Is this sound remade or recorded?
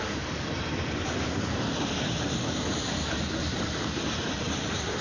remade